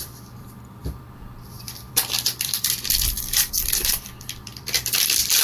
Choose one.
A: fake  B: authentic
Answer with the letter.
A